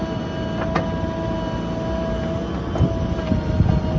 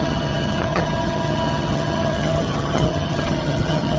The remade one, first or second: second